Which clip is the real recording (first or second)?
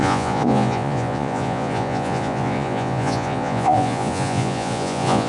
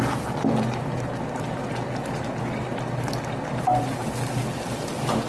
second